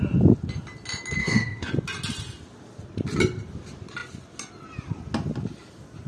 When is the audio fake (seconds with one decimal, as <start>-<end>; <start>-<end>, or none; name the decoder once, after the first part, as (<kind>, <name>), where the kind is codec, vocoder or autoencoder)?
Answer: 1.2-1.7 (autoencoder, DAC-VAE)